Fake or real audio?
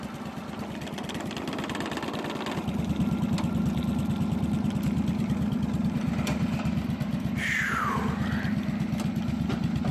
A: real